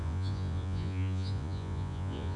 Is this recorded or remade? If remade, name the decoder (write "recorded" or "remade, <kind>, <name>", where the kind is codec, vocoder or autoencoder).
remade, vocoder, Vocos